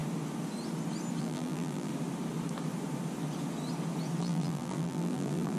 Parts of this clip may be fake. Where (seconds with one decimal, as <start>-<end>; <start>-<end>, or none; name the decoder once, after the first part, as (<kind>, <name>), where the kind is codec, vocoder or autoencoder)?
1.2-1.9 (vocoder, BigVGAN v2); 4.2-5.6